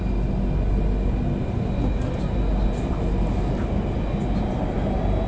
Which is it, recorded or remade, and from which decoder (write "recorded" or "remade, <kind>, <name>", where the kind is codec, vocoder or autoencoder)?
recorded